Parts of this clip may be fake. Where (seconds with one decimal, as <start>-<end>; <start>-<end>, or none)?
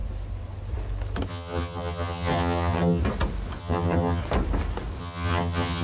1.3-3.0; 3.6-4.2; 5.0-5.8